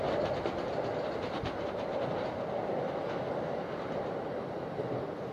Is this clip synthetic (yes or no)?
no